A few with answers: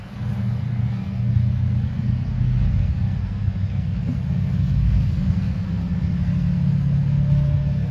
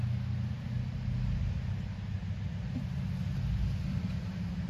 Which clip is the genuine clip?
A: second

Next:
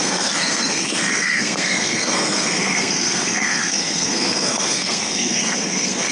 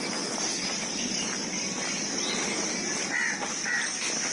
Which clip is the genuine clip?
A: second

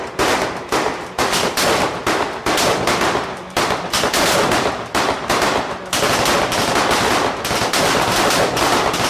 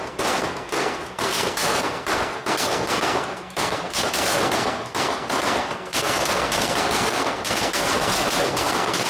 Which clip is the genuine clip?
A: first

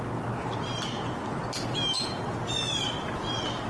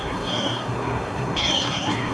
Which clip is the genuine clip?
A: first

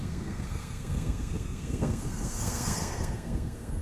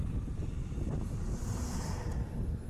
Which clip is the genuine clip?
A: second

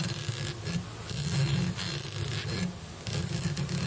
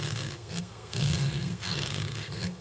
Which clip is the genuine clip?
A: first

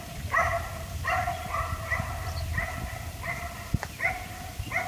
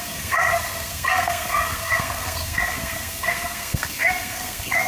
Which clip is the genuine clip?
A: first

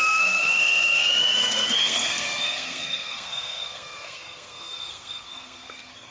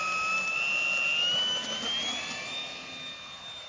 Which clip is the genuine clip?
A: second